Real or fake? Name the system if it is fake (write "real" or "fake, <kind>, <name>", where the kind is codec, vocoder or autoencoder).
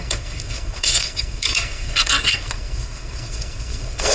fake, codec, SNAC